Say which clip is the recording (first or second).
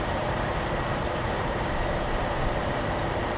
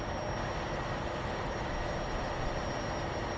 second